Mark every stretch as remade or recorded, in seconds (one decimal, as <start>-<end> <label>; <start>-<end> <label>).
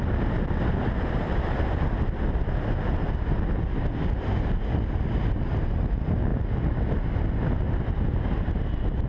0.0-9.1 recorded